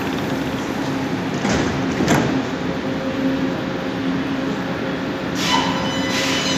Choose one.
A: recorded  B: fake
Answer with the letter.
A